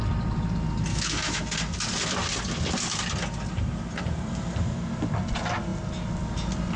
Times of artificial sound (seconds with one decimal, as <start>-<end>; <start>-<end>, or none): 0.9-1.4